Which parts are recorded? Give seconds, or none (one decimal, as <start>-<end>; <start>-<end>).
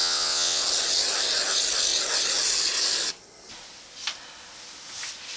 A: 0.6-5.4